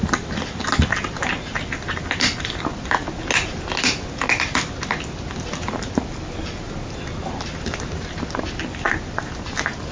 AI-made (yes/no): no